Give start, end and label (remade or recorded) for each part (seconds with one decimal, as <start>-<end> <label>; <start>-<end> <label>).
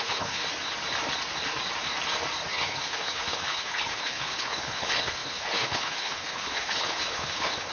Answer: 0.0-0.4 remade; 0.4-2.5 recorded; 2.5-7.7 remade